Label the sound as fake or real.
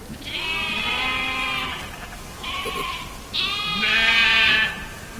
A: real